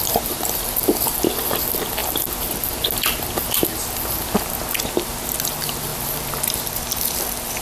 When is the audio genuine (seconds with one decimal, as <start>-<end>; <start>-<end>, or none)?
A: 0.0-7.6